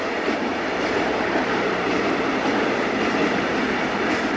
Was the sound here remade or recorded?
remade